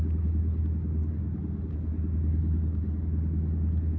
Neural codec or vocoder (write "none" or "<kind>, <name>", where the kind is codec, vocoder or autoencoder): none